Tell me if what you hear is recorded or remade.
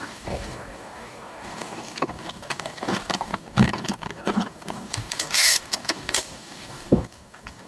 remade